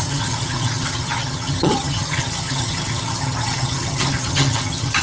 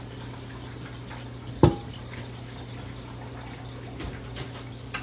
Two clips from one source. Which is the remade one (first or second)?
first